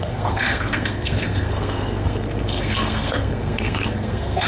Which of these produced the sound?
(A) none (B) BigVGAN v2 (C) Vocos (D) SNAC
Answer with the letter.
D